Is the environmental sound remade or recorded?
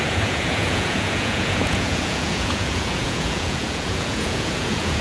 remade